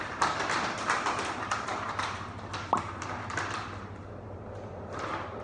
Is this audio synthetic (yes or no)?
yes